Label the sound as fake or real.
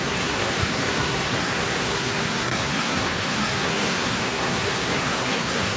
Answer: fake